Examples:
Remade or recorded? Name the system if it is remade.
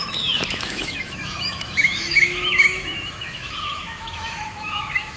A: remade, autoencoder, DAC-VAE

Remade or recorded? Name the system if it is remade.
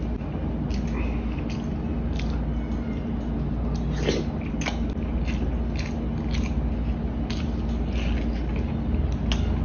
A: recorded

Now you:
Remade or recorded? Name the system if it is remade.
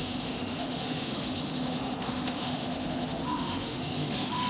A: remade, autoencoder, DAC-VAE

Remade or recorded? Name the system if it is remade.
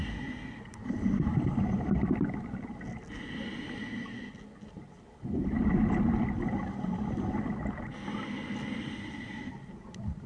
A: recorded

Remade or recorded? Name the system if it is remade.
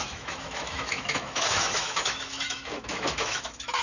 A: remade, autoencoder, DAC-VAE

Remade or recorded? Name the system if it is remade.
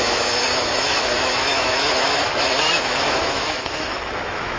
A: remade, autoencoder, DAC-VAE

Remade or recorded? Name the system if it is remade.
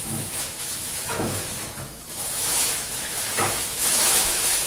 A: remade, autoencoder, DAC-VAE